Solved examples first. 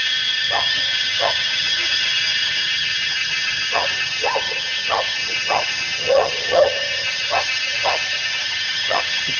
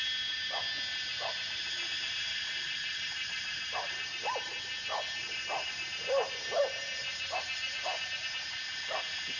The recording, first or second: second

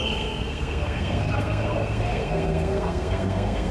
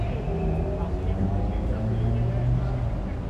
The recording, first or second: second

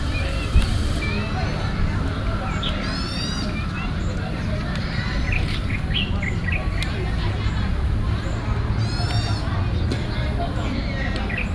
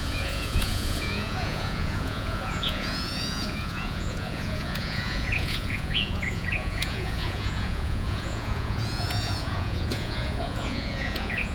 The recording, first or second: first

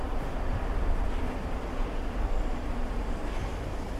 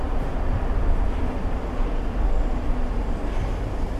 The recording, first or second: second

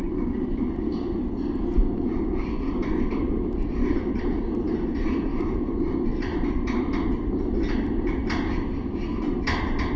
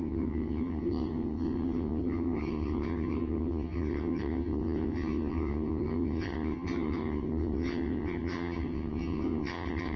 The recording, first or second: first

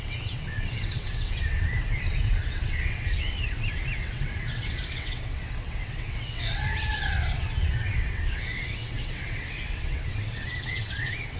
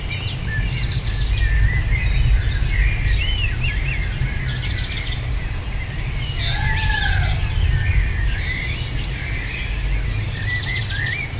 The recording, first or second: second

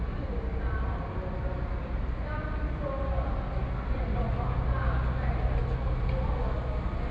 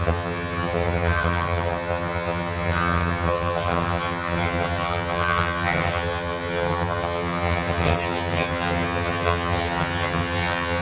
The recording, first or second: first